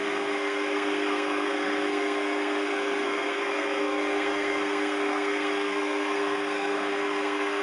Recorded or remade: remade